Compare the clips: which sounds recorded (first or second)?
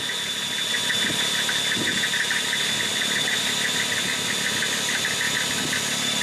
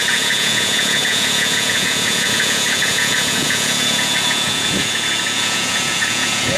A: first